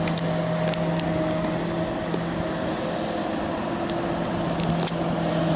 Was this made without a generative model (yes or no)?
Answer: yes